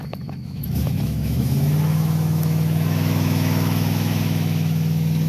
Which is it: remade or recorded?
remade